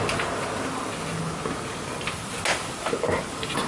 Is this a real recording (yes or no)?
yes